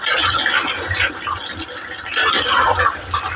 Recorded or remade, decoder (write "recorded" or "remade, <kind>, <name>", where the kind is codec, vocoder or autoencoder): recorded